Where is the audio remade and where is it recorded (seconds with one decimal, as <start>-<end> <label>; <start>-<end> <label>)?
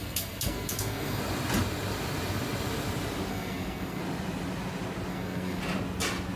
0.0-1.2 remade; 1.2-3.3 recorded; 3.3-4.0 remade; 4.0-5.1 recorded; 5.1-5.6 remade; 5.6-6.4 recorded